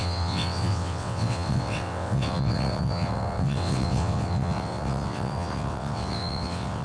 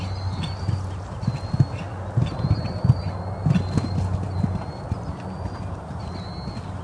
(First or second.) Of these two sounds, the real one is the second